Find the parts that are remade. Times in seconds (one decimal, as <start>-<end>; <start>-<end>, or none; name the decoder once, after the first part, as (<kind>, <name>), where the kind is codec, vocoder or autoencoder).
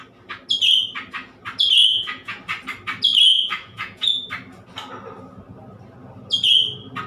1.8-2.4 (vocoder, Vocos); 3.3-4.3